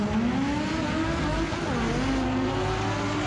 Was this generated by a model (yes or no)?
no